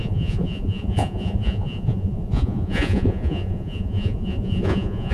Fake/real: fake